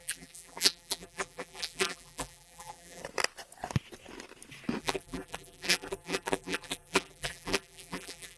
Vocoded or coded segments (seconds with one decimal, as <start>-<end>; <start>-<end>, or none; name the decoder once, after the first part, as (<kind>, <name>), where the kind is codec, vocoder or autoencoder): 0.0-3.0 (vocoder, BigVGAN v2); 4.8-8.4